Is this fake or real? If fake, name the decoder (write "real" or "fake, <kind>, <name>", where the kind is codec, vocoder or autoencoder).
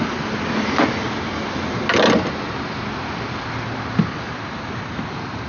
real